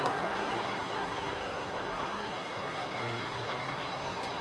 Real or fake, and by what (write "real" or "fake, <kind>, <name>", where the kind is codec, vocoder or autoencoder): fake, codec, SNAC